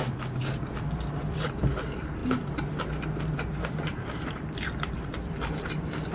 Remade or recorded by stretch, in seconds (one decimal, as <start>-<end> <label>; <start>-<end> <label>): 0.0-2.2 remade; 2.2-3.2 recorded; 3.2-6.1 remade